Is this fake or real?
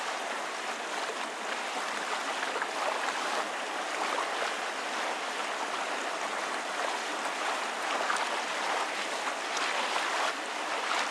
real